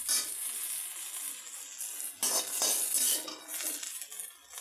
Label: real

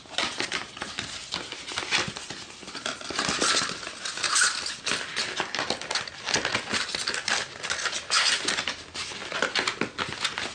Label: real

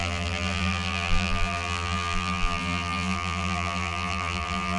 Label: fake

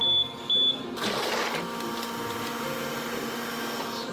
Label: real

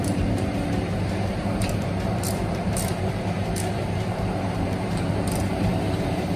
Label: fake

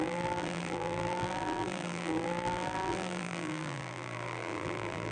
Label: fake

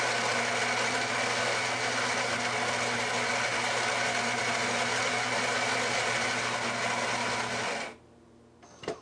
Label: real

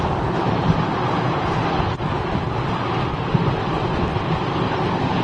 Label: real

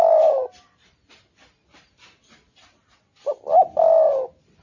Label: fake